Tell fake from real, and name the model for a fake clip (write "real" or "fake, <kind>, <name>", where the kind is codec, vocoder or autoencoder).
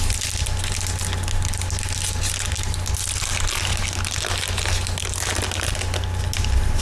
real